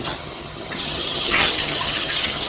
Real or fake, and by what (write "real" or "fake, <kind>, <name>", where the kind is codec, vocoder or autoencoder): fake, vocoder, HiFi-GAN